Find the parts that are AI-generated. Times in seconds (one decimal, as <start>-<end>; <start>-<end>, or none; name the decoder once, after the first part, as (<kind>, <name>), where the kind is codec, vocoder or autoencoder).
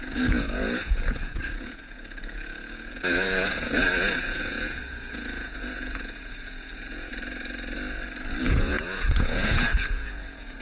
0.0-7.1 (vocoder, Vocos); 8.4-10.6